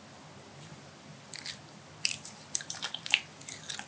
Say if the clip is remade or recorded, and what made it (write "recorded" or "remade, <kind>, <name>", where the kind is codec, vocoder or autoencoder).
recorded